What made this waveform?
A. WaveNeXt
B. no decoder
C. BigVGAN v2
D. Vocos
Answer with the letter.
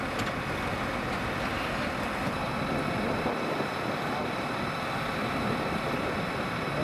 B